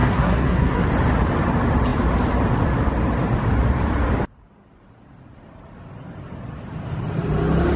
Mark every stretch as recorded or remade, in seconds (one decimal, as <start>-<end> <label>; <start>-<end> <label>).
0.0-0.9 remade; 0.9-7.8 recorded